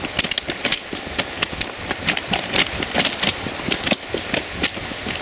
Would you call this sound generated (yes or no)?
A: no